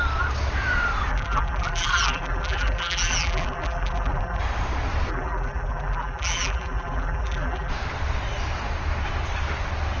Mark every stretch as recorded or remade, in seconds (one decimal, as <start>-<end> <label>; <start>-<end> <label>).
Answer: 0.0-1.1 recorded; 1.1-4.4 remade; 4.4-5.1 recorded; 5.1-7.7 remade; 7.7-10.0 recorded